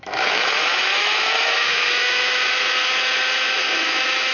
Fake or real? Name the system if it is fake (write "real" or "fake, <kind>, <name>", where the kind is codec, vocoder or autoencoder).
fake, autoencoder, DAC-VAE